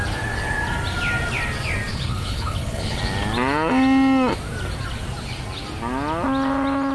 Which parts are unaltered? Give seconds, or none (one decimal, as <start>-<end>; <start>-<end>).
0.0-1.9; 3.0-6.9